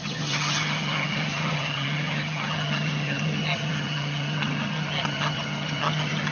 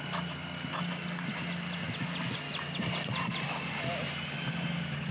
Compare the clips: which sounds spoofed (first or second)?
first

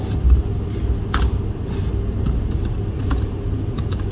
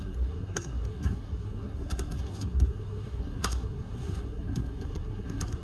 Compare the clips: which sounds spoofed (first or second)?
second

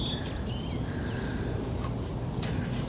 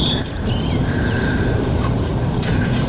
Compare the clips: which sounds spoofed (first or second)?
second